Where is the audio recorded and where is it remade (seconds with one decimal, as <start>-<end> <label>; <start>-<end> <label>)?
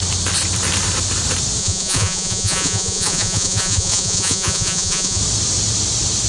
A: 0.0-1.6 recorded; 1.6-5.2 remade; 5.2-6.3 recorded